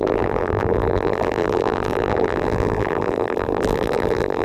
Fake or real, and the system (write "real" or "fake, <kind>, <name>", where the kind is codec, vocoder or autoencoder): fake, vocoder, BigVGAN v2